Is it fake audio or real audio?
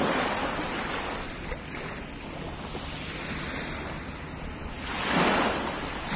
real